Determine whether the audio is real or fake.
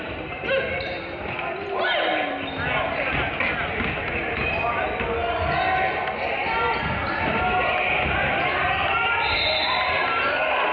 real